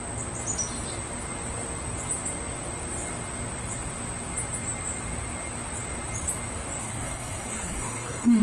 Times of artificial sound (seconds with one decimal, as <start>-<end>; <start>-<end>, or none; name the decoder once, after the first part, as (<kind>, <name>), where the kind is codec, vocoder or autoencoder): 6.8-8.4 (codec, SNAC)